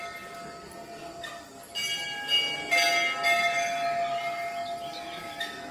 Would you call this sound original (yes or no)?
yes